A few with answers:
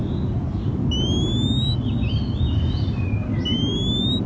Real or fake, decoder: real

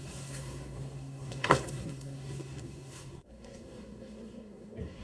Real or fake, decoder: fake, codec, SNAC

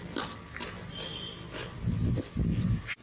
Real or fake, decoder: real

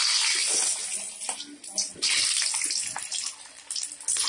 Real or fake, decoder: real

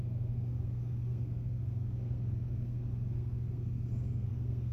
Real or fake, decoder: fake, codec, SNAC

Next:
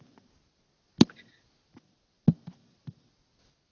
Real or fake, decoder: real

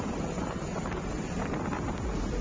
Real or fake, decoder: real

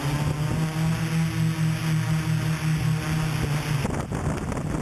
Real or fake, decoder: real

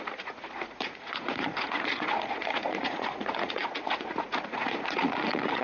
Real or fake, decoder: fake, vocoder, Vocos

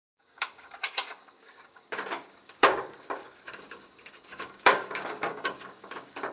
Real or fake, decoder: fake, codec, DAC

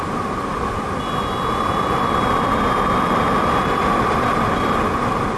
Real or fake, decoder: fake, vocoder, BigVGAN v2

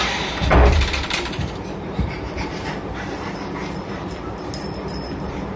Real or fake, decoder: fake, vocoder, BigVGAN v2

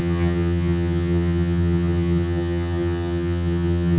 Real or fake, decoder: fake, vocoder, HiFi-GAN